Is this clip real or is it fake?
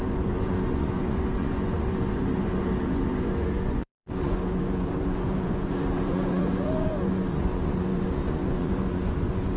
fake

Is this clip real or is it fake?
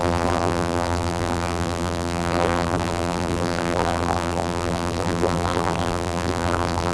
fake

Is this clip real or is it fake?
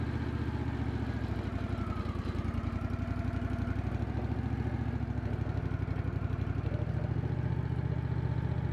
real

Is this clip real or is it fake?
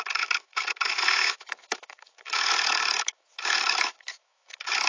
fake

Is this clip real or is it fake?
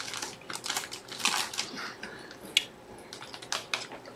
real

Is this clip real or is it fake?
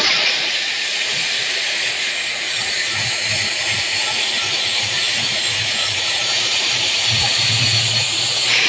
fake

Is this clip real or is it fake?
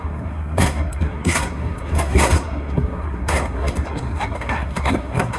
fake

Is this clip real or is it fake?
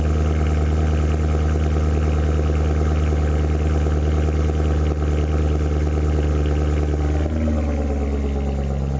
real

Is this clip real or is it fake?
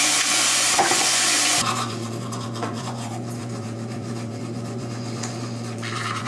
fake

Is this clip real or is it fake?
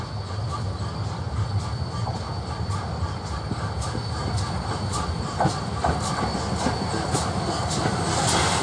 real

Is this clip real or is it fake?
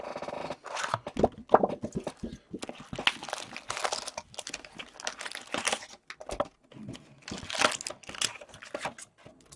real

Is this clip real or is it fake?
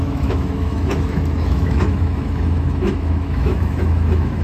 fake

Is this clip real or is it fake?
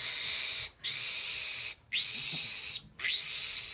real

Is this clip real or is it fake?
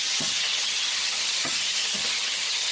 fake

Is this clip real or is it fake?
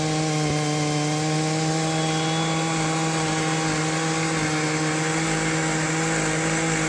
real